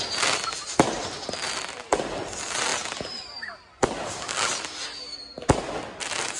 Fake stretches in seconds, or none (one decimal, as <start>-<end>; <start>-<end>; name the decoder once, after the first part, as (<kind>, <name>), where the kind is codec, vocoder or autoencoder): none